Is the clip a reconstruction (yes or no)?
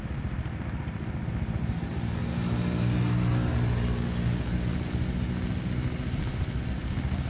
no